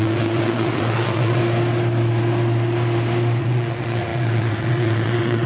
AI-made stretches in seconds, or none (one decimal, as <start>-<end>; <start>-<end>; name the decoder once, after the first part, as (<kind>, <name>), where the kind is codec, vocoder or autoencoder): 0.0-1.4 (vocoder, WaveNeXt); 3.4-5.5